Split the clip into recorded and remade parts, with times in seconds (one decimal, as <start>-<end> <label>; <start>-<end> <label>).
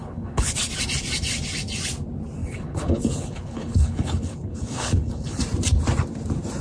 0.0-0.7 remade; 0.7-2.4 recorded; 2.4-5.4 remade; 5.4-6.6 recorded